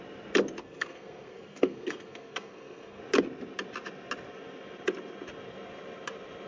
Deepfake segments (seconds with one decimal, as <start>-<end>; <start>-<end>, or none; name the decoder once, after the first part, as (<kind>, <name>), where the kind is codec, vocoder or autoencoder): 0.6-3.0 (codec, SNAC)